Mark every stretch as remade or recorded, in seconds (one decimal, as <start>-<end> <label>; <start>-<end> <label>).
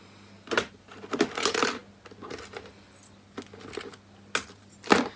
0.0-5.2 recorded